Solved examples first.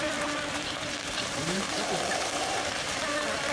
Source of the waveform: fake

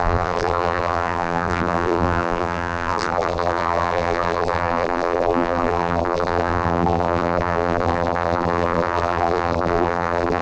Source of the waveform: fake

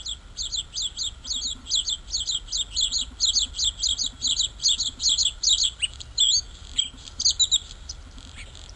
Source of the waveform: real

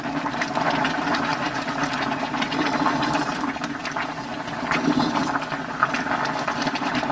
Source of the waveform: fake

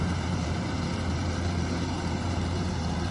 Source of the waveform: fake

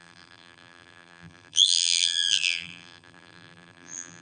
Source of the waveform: fake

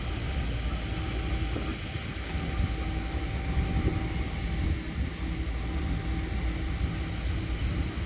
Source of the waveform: real